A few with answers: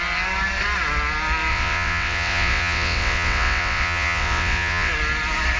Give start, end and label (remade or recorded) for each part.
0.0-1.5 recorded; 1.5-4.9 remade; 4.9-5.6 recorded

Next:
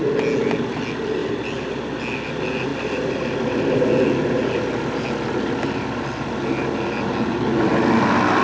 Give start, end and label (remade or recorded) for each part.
0.0-8.4 recorded

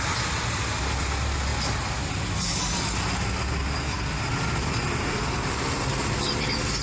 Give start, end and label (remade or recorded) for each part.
0.0-6.8 recorded

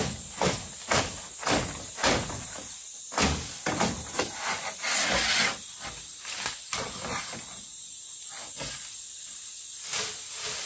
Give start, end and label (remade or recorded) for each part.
0.0-10.7 recorded